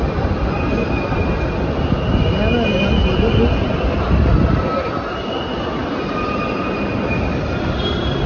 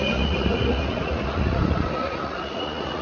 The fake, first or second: second